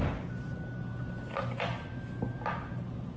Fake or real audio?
real